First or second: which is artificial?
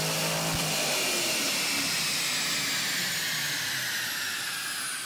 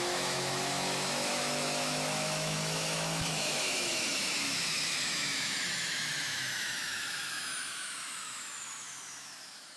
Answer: second